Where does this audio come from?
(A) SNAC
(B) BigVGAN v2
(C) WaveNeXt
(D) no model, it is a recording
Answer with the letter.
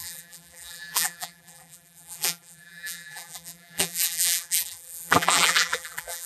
B